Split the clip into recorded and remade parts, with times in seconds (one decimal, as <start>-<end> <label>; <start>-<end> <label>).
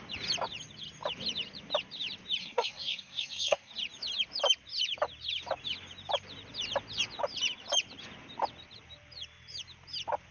0.0-2.4 recorded; 2.4-3.7 remade; 3.7-10.3 recorded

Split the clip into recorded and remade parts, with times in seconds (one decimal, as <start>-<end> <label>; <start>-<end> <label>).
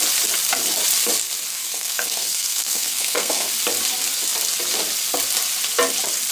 0.0-1.5 recorded; 1.5-3.5 remade; 3.5-6.3 recorded